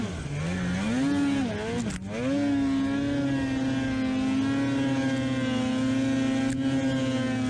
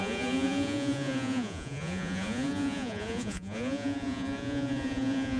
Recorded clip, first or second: first